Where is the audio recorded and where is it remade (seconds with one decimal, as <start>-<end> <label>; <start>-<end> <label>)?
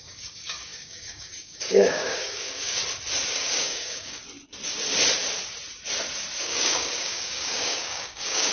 0.0-2.8 remade; 2.8-3.3 recorded; 3.3-4.2 remade; 4.2-6.4 recorded; 6.4-8.5 remade